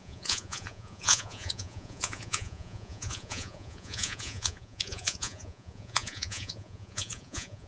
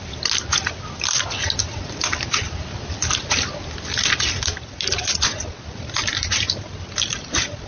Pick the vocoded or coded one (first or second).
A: first